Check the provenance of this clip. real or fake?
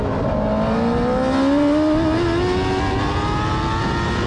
real